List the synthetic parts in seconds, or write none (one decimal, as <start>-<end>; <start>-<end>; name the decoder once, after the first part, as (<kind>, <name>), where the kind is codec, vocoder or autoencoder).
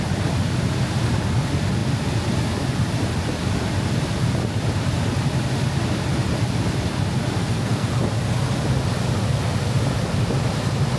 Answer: 7.4-7.9 (codec, SNAC)